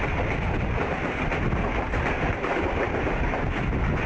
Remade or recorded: recorded